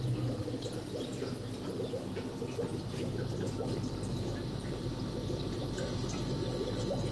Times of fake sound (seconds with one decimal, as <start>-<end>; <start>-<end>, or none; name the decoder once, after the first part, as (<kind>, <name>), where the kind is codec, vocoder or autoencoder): 2.7-3.5 (vocoder, BigVGAN v2); 4.1-6.2